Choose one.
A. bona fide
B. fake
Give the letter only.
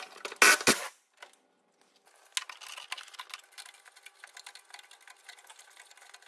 A